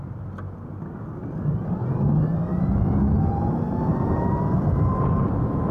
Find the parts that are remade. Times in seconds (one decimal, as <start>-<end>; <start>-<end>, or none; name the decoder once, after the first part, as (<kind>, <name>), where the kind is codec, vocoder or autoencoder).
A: none